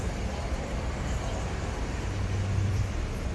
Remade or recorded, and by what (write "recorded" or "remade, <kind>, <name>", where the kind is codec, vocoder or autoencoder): recorded